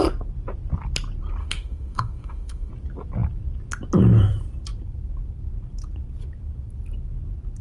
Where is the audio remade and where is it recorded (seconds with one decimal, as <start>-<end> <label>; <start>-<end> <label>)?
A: 0.0-1.4 recorded; 1.4-2.7 remade; 2.7-7.6 recorded